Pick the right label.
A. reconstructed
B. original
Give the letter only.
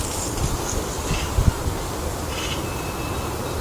B